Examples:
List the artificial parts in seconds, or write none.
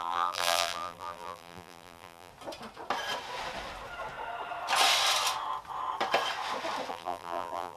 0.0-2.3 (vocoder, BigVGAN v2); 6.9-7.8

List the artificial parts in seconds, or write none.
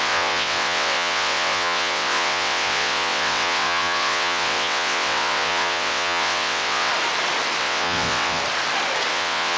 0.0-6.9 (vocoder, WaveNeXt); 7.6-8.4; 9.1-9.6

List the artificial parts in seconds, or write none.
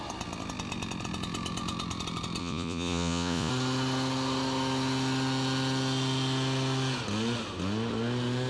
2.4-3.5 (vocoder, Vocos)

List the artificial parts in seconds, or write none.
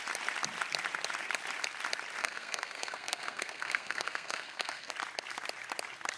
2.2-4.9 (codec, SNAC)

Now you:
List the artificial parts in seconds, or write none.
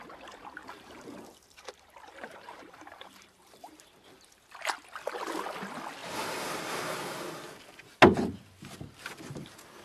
0.6-3.9 (vocoder, BigVGAN v2); 6.0-6.6